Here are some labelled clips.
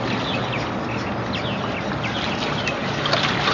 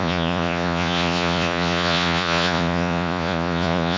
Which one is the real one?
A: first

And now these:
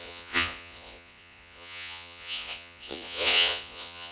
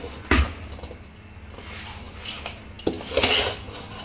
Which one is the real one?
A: second